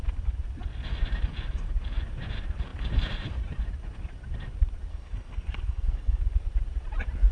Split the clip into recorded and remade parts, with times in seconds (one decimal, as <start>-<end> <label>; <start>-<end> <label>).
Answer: 0.0-4.9 recorded; 4.9-6.2 remade; 6.2-7.3 recorded